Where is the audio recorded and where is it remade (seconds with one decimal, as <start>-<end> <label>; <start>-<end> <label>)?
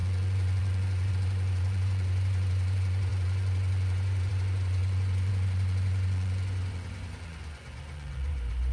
0.0-8.7 remade